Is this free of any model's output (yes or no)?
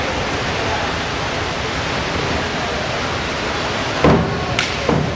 yes